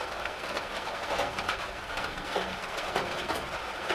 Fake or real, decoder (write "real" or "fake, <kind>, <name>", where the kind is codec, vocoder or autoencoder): fake, codec, SNAC